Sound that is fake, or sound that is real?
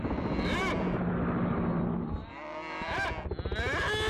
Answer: real